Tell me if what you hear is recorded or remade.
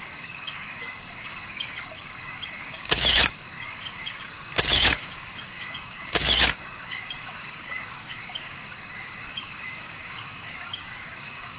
remade